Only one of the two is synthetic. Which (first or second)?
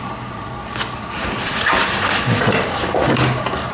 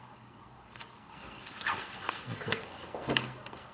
second